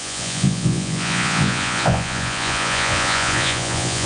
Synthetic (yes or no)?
yes